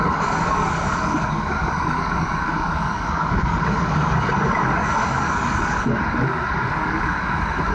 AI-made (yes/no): yes